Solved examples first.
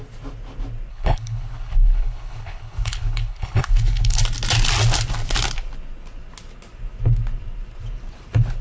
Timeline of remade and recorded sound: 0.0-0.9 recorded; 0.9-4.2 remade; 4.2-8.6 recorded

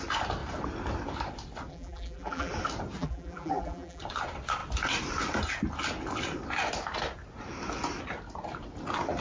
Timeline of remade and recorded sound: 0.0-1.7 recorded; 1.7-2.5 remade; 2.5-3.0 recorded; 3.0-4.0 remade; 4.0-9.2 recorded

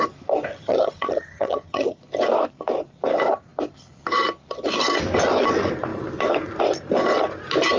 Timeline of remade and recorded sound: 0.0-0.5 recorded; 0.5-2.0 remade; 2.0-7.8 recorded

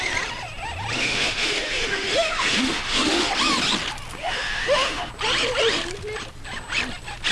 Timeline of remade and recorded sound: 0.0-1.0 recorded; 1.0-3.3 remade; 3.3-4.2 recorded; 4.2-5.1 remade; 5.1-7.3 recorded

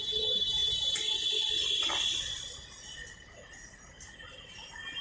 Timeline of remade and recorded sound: 0.0-5.0 recorded

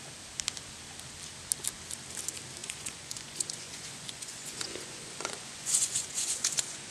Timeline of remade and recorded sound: 0.0-2.6 recorded; 2.6-6.9 remade